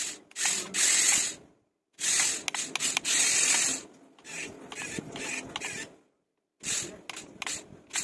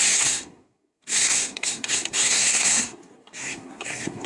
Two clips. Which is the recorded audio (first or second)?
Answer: first